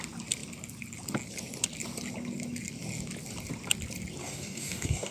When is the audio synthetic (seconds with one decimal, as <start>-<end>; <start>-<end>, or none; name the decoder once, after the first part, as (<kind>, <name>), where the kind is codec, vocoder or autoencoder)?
4.2-5.1 (codec, DAC)